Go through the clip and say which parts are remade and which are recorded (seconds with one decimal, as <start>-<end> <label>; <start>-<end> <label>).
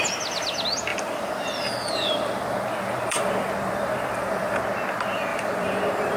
0.0-0.9 recorded; 0.9-4.6 remade; 4.6-5.3 recorded; 5.3-6.2 remade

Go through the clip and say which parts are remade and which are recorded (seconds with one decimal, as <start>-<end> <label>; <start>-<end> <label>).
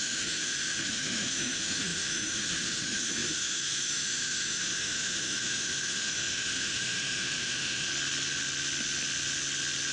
0.0-7.9 remade; 7.9-9.9 recorded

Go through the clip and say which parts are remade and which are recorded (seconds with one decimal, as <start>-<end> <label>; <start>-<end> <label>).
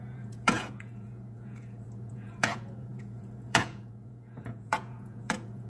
0.0-5.7 remade